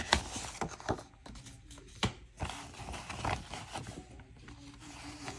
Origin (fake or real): real